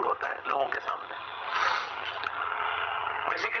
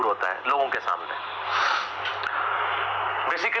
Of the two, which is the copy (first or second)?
first